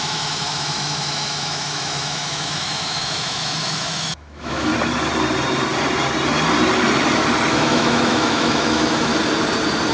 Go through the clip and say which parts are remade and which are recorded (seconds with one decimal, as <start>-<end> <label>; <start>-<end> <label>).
0.0-4.7 remade; 4.7-7.5 recorded; 7.5-9.1 remade; 9.1-9.9 recorded